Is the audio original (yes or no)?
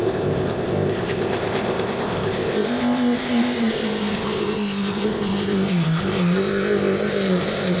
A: no